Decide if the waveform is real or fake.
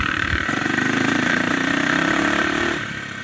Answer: fake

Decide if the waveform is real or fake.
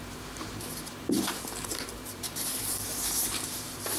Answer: fake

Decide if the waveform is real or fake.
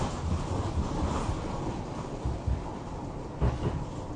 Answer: fake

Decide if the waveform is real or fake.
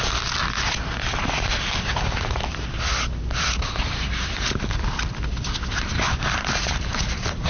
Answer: real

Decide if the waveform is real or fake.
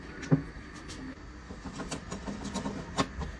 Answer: real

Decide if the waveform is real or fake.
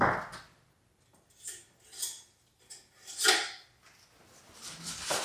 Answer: real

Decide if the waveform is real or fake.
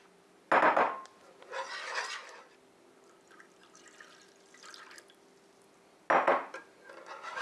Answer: real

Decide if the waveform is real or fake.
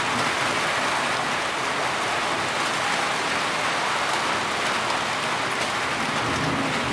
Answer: real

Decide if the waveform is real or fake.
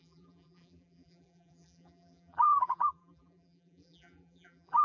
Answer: fake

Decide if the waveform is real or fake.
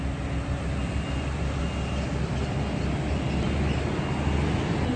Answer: real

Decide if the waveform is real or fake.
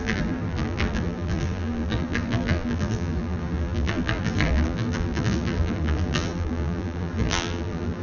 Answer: fake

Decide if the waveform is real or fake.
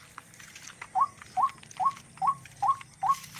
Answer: fake